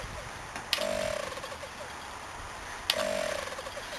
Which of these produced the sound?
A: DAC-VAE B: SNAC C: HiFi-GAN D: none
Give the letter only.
D